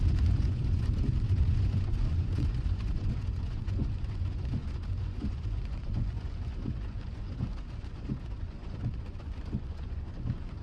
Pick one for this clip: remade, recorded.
remade